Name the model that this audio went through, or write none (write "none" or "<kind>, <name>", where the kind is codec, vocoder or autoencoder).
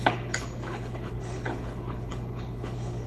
codec, HILCodec